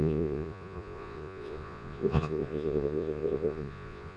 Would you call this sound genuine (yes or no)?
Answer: no